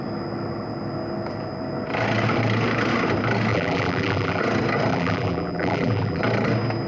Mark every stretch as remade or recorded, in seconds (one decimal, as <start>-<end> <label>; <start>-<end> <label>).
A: 0.0-3.5 recorded; 3.5-4.4 remade; 4.4-4.9 recorded; 4.9-6.2 remade; 6.2-6.9 recorded